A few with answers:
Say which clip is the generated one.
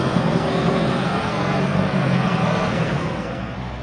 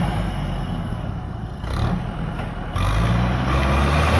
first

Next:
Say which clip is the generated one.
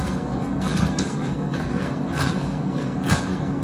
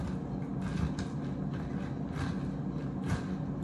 first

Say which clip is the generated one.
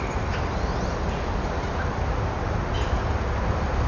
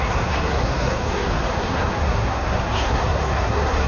second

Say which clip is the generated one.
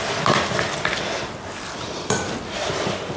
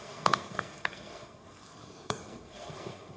second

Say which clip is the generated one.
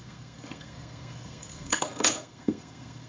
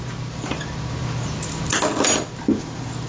first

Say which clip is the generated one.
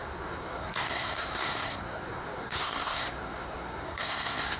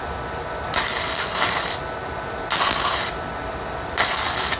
first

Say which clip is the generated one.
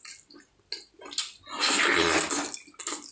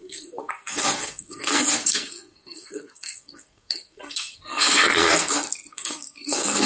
second